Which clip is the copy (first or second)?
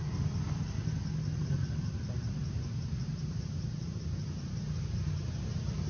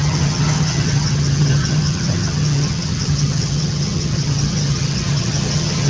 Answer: second